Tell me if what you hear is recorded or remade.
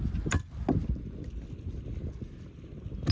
recorded